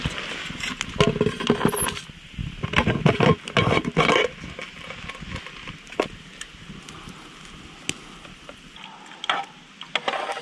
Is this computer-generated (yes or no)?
no